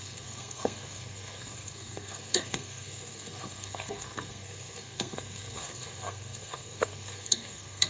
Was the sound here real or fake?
fake